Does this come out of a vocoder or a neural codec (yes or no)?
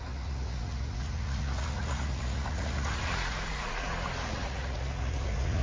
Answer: yes